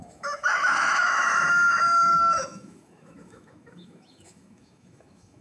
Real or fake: fake